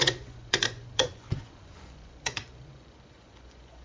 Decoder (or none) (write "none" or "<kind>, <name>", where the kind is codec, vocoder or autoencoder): vocoder, Vocos